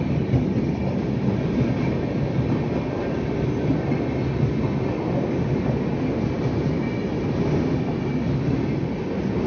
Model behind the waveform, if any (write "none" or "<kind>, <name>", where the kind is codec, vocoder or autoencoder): none